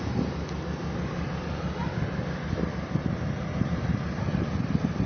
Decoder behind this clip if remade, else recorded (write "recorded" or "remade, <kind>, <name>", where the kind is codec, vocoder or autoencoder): recorded